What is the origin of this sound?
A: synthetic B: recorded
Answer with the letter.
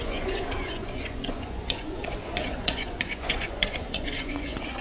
A